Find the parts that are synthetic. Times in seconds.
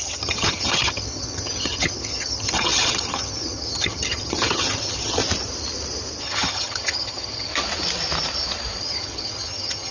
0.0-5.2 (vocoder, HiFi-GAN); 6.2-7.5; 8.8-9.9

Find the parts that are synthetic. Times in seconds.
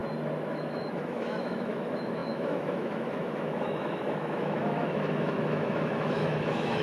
0.5-6.8 (autoencoder, DAC-VAE)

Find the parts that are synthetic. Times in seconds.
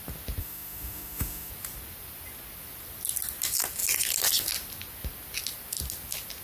0.4-1.5 (autoencoder, DAC-VAE)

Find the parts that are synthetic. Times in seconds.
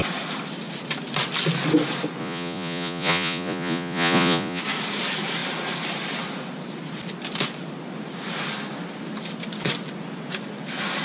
2.2-4.6 (vocoder, Vocos)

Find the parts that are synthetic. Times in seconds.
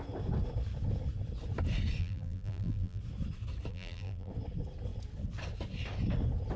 2.0-3.0 (vocoder, BigVGAN v2); 3.7-4.3